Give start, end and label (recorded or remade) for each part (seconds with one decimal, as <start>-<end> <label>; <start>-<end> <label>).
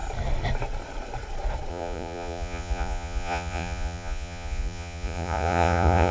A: 0.0-1.7 recorded; 1.7-6.1 remade